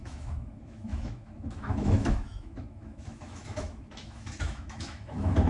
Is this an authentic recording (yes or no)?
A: no